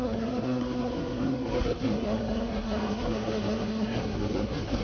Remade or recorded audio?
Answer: remade